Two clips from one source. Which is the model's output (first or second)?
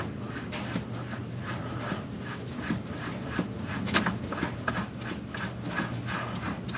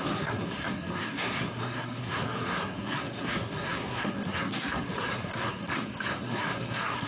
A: second